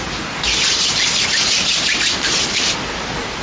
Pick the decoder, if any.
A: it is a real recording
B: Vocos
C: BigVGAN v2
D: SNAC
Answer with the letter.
A